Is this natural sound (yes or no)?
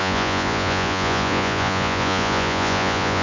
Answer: no